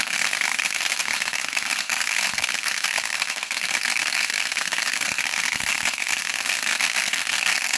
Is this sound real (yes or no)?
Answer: no